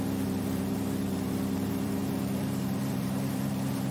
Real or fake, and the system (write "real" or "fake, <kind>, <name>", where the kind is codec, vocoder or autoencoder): fake, vocoder, BigVGAN v2